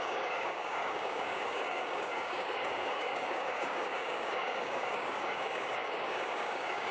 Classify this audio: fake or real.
fake